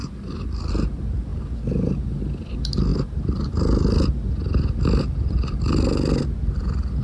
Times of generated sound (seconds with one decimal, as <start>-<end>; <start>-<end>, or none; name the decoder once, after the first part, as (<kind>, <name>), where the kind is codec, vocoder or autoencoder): none